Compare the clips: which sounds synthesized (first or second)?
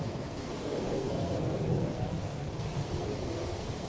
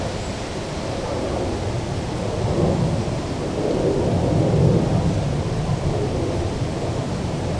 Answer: first